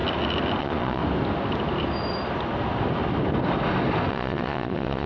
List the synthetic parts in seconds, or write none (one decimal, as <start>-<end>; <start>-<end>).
0.6-1.0; 4.1-5.1

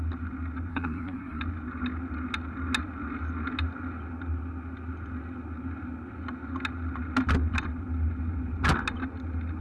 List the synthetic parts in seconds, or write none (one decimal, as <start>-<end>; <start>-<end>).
0.7-1.4

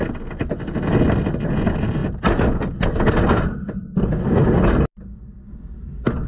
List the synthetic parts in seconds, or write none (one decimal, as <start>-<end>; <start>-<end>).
none

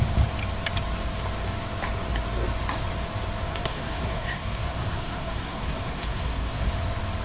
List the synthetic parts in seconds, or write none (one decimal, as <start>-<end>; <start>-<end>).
3.5-6.7